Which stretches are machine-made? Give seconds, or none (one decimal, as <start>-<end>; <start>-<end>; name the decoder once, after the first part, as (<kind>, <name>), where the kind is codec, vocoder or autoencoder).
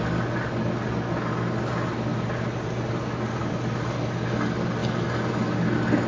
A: none